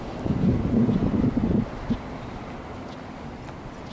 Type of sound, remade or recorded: recorded